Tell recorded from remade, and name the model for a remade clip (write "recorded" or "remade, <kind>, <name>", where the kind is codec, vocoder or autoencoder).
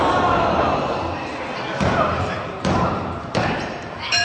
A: remade, vocoder, BigVGAN v2